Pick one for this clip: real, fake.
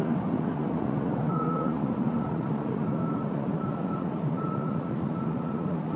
fake